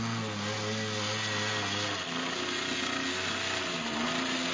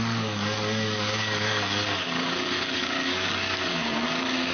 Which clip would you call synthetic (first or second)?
second